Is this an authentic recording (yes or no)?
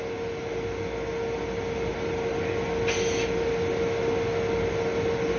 yes